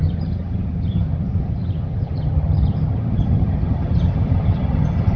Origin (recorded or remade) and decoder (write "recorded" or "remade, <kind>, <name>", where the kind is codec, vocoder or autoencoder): remade, vocoder, HiFi-GAN